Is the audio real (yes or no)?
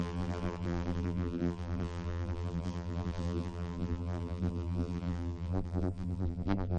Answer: no